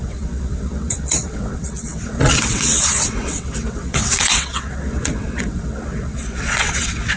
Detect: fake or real fake